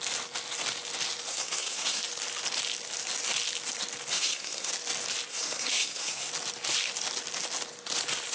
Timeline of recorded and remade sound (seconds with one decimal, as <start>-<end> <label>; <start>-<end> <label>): 0.0-1.3 recorded; 1.3-2.0 remade; 2.0-4.1 recorded; 4.1-4.7 remade; 4.7-5.3 recorded; 5.3-6.3 remade; 6.3-8.3 recorded